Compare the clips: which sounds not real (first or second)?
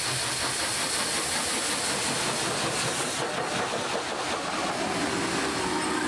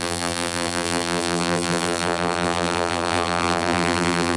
second